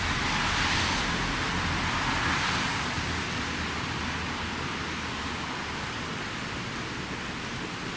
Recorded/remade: recorded